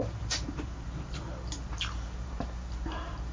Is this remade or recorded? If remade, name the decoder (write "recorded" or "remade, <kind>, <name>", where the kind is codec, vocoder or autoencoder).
remade, vocoder, BigVGAN v2